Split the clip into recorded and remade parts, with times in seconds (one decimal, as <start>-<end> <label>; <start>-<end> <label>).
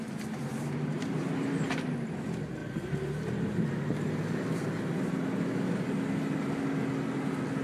0.0-0.5 recorded; 0.5-1.7 remade; 1.7-7.6 recorded